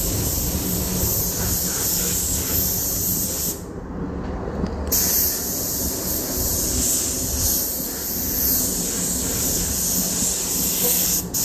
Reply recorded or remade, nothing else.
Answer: recorded